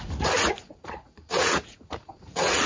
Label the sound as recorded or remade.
remade